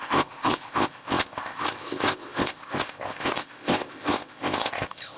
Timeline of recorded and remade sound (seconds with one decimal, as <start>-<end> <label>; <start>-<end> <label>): 0.0-5.2 remade